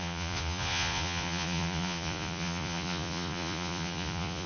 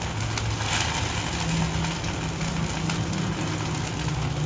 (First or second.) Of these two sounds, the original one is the second